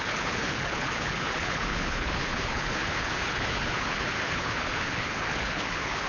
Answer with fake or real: fake